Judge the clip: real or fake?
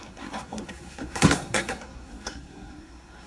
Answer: fake